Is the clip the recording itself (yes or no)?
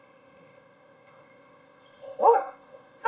no